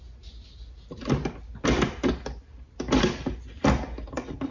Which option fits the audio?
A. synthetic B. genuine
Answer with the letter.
B